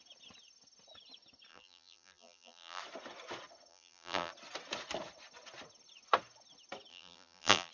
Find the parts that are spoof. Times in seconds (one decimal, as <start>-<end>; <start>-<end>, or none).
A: 1.5-2.8; 3.7-4.3; 6.9-7.7